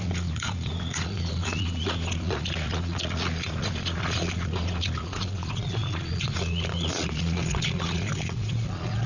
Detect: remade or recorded remade